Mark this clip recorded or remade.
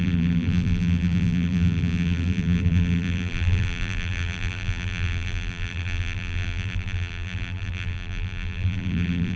remade